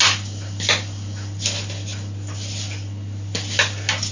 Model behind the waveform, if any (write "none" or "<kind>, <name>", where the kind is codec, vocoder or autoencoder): none